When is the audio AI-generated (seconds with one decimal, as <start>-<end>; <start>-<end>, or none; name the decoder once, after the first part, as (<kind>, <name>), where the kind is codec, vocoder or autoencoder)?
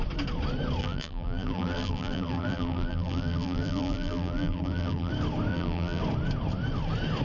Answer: 0.8-5.1 (vocoder, BigVGAN v2); 5.5-6.0